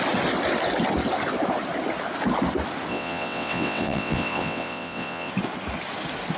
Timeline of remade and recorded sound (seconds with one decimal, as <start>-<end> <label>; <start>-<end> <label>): 0.0-2.9 recorded; 2.9-5.3 remade; 5.3-6.4 recorded